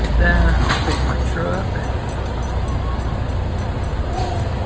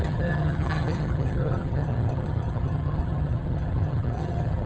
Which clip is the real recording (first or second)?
first